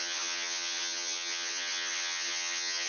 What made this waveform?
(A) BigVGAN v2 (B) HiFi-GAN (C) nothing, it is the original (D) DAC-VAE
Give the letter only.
B